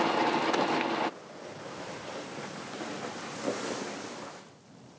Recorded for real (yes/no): yes